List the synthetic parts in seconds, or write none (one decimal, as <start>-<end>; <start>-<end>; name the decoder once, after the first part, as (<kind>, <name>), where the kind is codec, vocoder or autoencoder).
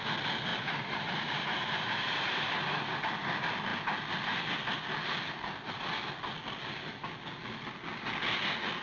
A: 0.5-3.0 (vocoder, BigVGAN v2)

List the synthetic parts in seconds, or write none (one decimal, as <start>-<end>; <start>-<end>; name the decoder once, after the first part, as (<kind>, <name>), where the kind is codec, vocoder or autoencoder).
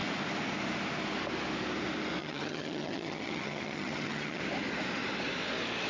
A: 2.2-4.4 (vocoder, HiFi-GAN)